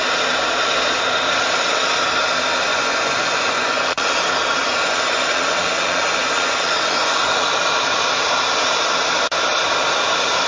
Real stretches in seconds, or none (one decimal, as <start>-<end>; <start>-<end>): 0.0-2.7; 4.1-4.6; 7.6-10.5